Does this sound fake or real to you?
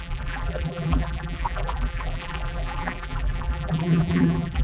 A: fake